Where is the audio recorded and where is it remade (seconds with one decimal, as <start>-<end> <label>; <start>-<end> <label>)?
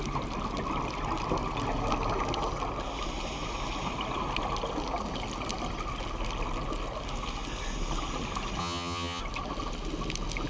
0.0-8.6 recorded; 8.6-9.2 remade; 9.2-10.5 recorded